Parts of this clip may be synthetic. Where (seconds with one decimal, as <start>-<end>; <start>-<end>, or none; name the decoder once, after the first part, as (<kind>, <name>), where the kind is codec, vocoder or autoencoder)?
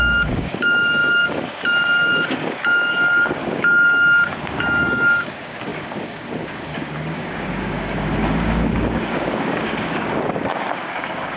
0.0-11.4 (codec, DAC)